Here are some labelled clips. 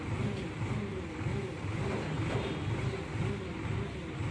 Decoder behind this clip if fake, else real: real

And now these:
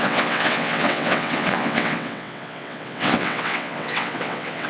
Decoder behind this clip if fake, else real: fake, vocoder, WaveNeXt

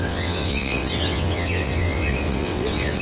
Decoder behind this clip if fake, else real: fake, vocoder, WaveNeXt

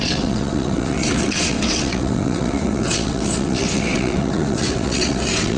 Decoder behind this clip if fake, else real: fake, vocoder, WaveNeXt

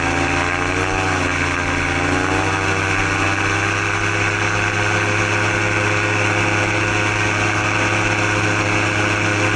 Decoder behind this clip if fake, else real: real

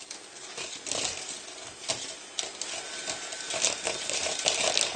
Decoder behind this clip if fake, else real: real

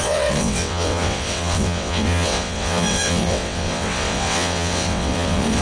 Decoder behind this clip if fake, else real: fake, vocoder, WaveNeXt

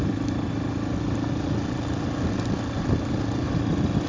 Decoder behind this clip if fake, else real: real